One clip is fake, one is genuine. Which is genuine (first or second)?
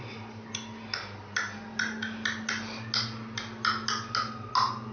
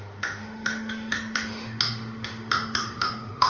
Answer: first